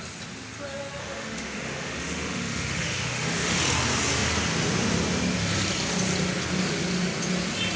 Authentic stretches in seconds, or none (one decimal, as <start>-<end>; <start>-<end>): 0.0-1.0; 3.6-7.8

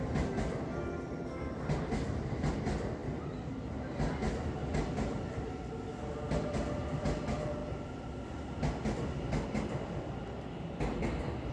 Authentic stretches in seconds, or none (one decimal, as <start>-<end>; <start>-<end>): 0.0-11.5

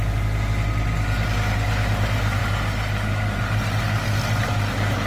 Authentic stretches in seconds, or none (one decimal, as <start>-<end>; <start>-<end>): 0.0-5.1

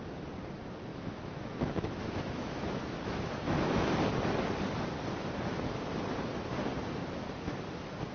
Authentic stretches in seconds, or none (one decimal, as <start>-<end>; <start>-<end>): 0.0-0.9; 3.9-8.1

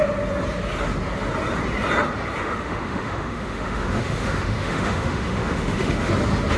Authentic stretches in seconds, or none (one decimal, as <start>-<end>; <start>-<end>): 0.0-2.4; 6.1-6.6

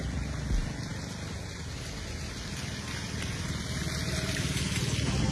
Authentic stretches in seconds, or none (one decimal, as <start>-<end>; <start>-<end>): 0.0-5.3

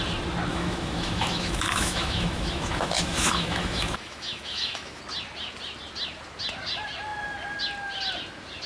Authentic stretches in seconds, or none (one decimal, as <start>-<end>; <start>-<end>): 0.0-0.5; 5.0-8.7